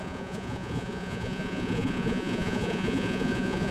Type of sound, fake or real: fake